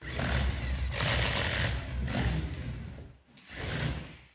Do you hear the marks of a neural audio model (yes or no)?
no